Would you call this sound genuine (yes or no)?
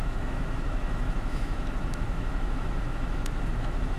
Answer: no